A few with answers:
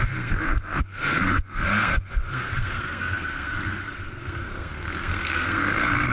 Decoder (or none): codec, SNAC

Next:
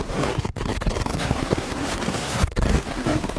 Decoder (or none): codec, SNAC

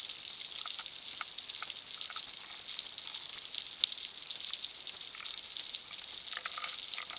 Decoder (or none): none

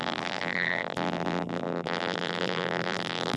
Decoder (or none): vocoder, BigVGAN v2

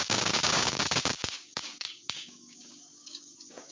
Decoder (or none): codec, DAC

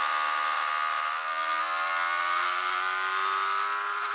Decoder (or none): none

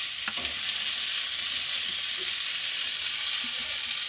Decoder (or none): none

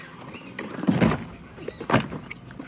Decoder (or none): none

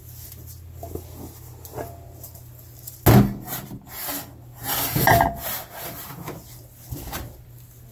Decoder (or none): none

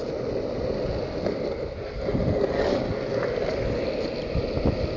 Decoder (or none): none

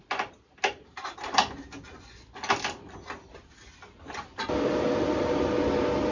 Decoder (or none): none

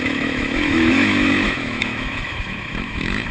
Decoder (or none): autoencoder, DAC-VAE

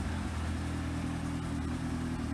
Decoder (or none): none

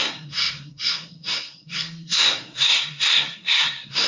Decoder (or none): codec, SNAC